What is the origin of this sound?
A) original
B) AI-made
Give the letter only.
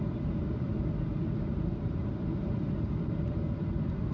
A